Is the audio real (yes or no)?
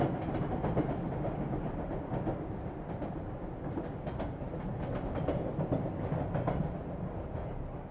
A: yes